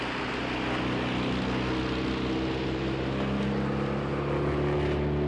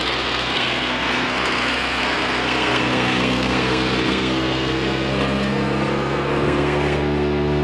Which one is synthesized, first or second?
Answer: second